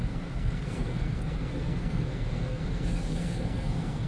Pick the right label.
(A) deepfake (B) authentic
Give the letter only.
A